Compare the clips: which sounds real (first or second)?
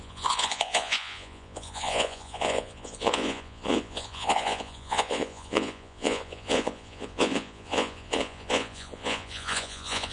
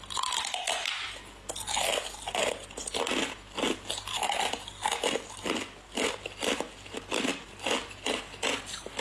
second